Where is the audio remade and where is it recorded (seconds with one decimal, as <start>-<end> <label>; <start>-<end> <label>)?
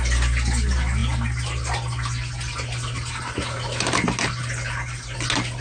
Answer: 0.0-5.6 recorded